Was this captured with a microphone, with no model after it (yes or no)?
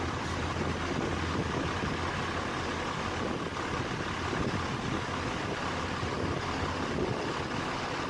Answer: yes